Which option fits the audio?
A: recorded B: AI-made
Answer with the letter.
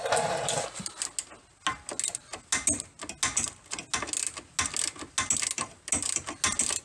A